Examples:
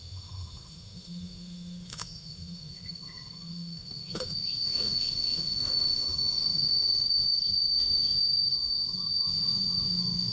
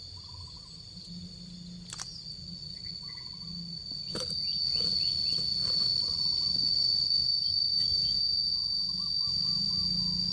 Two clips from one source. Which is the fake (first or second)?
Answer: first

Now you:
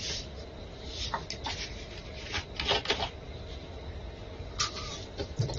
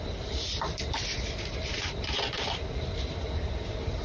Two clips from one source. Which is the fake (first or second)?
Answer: second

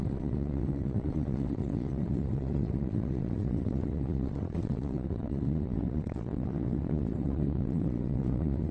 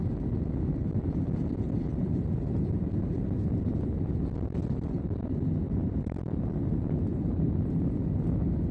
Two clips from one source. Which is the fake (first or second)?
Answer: first